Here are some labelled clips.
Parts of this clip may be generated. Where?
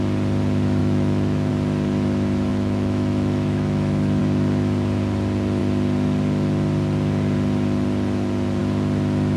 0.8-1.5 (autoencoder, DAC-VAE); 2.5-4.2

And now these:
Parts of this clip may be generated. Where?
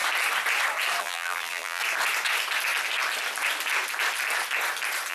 1.0-1.8 (vocoder, BigVGAN v2)